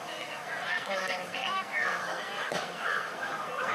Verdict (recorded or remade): remade